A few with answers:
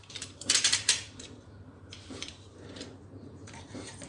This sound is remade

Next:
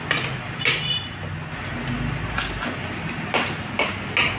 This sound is recorded